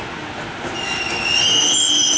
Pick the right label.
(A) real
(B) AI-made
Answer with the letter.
A